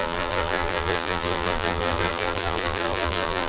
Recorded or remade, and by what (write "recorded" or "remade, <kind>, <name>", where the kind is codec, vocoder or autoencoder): remade, vocoder, BigVGAN v2